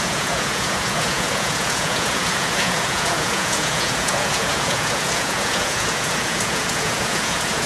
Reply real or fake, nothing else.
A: fake